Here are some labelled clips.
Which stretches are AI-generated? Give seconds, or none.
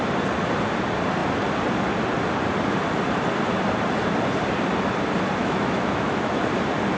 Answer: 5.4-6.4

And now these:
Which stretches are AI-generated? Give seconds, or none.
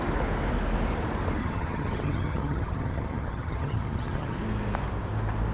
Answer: 1.4-4.4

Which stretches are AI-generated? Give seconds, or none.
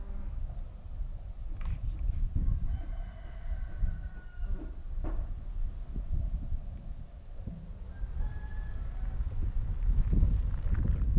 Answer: none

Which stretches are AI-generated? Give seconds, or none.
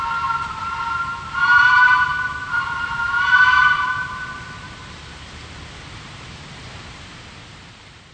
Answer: 0.0-8.1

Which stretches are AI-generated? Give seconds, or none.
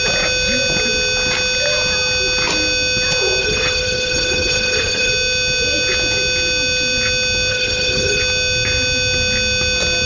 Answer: 3.4-5.1; 7.5-8.2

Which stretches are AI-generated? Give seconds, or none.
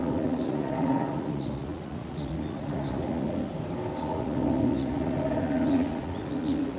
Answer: 0.0-3.5; 4.0-6.8